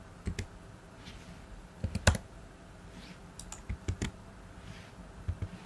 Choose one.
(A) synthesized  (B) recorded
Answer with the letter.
B